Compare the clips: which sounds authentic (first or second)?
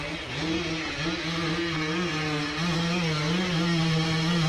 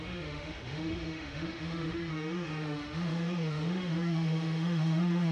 first